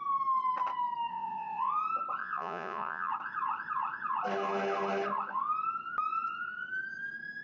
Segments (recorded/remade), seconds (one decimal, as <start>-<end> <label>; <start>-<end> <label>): 0.0-1.1 recorded; 1.1-1.7 remade; 1.7-2.2 recorded; 2.2-3.1 remade; 3.1-7.4 recorded

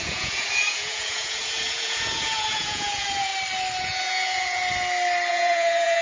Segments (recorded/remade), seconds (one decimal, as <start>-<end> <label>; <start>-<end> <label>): 0.0-3.3 remade; 3.3-3.8 recorded; 3.8-4.6 remade; 4.6-5.3 recorded; 5.3-6.0 remade

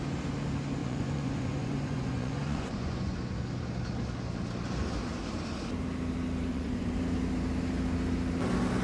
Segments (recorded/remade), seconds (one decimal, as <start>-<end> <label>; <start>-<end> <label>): 0.0-0.8 recorded; 0.8-3.2 remade; 3.2-6.5 recorded; 6.5-7.0 remade; 7.0-8.8 recorded

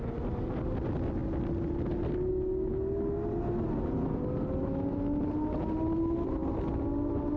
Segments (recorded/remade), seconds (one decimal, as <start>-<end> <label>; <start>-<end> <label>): 0.0-7.4 recorded

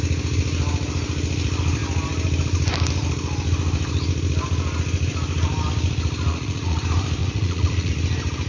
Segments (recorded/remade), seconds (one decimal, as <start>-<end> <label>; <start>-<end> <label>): 0.0-6.3 recorded; 6.3-6.8 remade; 6.8-7.2 recorded; 7.2-7.9 remade; 7.9-8.5 recorded

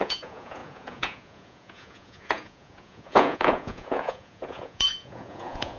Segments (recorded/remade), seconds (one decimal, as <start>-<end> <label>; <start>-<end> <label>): 0.0-5.8 remade